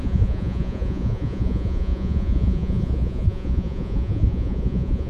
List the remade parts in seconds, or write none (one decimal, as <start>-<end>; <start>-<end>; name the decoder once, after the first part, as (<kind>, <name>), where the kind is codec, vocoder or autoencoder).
0.0-5.1 (vocoder, Vocos)